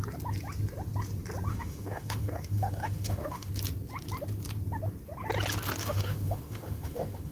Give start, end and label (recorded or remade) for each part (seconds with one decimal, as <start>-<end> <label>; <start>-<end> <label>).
0.0-1.5 recorded; 1.5-3.5 remade; 3.5-5.8 recorded; 5.8-7.3 remade